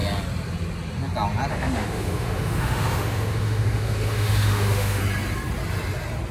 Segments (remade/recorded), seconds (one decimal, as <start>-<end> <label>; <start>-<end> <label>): 0.0-1.5 recorded; 1.5-5.0 remade; 5.0-6.3 recorded